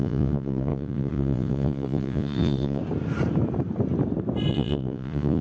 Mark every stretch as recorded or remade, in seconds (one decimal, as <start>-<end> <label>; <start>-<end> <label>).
0.0-2.8 remade; 2.8-4.5 recorded; 4.5-5.4 remade